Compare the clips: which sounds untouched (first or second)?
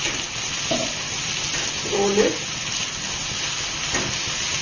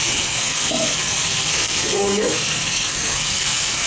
first